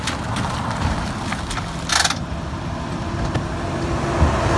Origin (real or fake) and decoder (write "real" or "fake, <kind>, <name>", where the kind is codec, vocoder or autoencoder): real